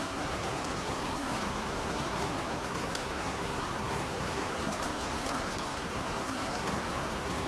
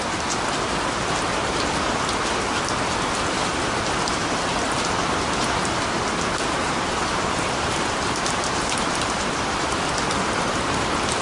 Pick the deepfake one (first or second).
first